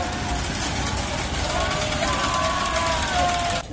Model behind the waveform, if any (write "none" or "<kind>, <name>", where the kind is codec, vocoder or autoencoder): none